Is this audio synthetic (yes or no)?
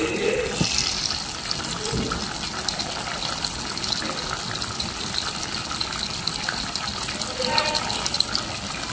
no